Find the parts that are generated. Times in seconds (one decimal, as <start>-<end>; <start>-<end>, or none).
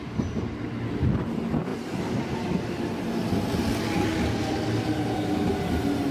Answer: none